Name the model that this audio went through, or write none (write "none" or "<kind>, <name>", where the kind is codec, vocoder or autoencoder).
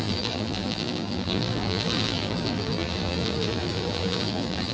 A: vocoder, BigVGAN v2